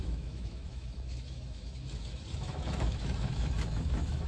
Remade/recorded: remade